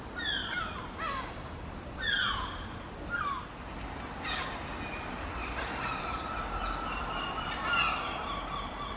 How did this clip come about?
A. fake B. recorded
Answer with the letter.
B